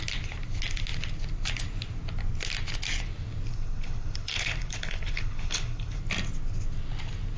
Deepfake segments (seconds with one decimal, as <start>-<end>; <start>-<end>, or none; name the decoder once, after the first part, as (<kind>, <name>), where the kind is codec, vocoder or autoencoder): 3.5-6.0 (codec, HILCodec)